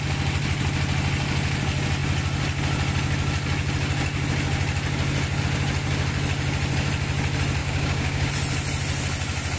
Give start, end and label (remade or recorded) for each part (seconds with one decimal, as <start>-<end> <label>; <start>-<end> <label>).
0.0-7.6 recorded; 7.6-8.3 remade; 8.3-9.6 recorded